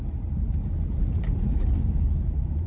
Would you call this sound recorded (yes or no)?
no